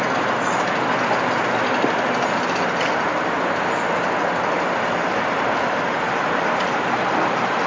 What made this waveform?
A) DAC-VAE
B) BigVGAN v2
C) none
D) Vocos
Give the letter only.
C